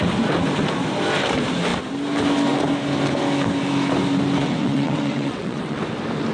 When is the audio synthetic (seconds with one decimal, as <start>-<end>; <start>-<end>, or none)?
4.4-5.8